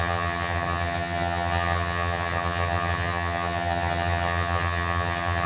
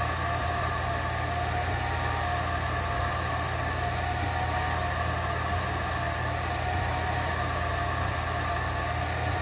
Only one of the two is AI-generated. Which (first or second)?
first